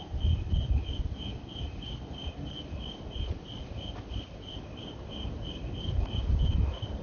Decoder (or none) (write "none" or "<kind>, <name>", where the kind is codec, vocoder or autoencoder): vocoder, BigVGAN v2